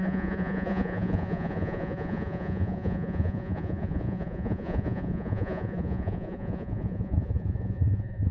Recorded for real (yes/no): no